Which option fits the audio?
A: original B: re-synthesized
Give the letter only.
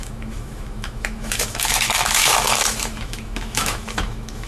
B